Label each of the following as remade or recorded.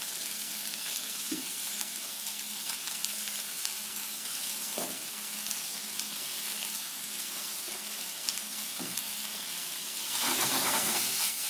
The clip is remade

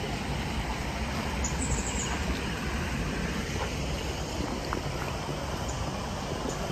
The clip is remade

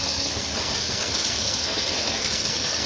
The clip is remade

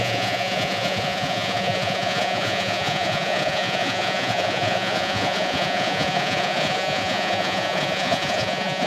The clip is remade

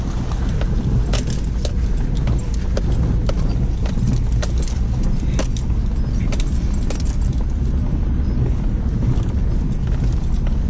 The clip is recorded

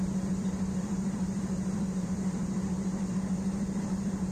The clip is remade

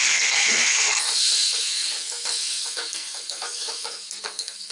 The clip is remade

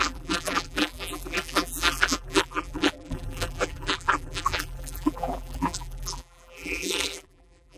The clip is remade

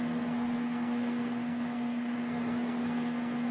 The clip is remade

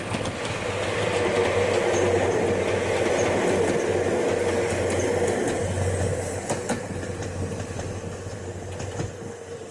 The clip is recorded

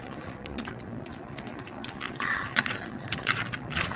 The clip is remade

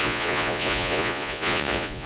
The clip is remade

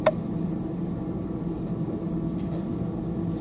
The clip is recorded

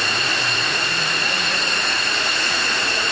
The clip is remade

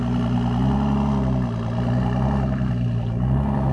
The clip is recorded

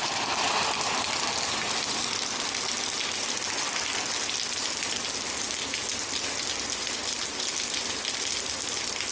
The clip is recorded